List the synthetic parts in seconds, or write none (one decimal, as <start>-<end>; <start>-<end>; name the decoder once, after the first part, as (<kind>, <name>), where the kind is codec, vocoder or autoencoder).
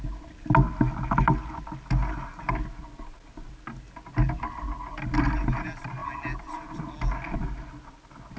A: none